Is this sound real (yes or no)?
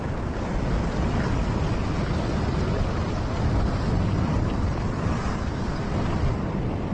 yes